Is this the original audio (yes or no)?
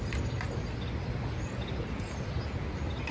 yes